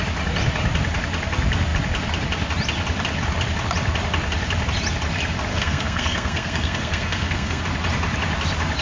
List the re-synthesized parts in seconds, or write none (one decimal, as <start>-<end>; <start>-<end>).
5.5-7.6